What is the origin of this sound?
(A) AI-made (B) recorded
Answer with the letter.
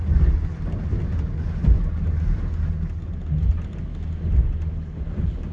B